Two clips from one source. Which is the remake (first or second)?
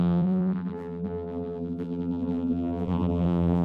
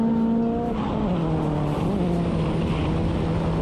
first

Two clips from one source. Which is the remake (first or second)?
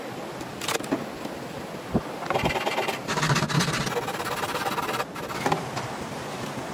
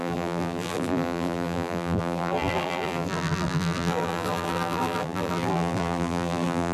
second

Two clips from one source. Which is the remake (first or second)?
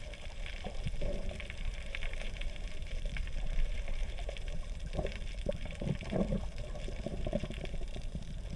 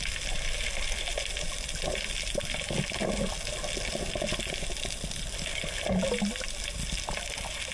first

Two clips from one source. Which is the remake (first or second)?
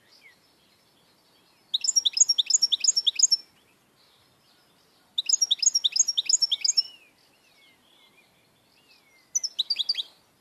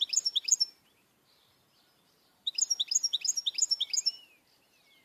second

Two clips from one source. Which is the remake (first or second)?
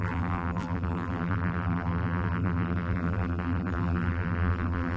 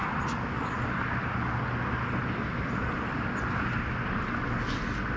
first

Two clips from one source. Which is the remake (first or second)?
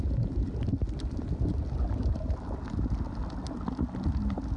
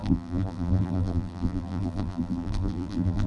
second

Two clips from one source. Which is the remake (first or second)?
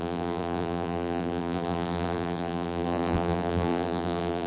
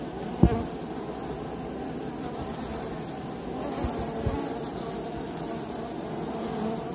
first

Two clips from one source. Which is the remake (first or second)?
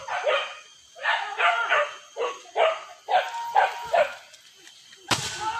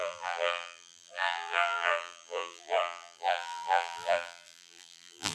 second